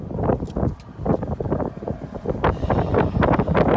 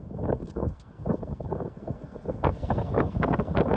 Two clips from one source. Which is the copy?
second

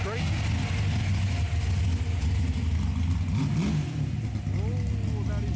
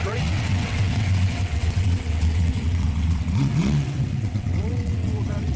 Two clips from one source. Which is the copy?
second